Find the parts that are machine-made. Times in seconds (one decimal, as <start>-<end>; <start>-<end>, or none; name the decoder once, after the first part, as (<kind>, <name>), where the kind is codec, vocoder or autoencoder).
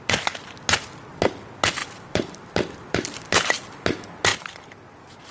1.8-3.8 (vocoder, BigVGAN v2); 4.3-5.3